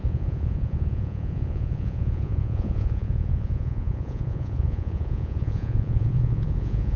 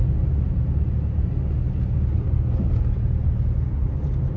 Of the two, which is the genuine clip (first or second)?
second